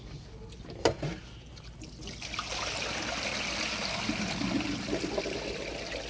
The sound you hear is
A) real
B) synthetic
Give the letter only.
A